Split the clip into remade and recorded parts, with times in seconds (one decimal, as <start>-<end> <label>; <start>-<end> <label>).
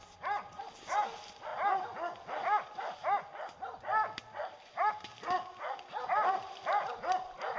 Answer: 0.0-7.6 recorded